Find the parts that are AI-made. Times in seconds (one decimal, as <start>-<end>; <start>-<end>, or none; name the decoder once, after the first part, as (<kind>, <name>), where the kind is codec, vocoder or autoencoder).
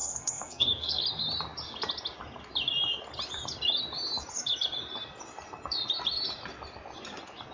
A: 0.0-1.0 (codec, SNAC)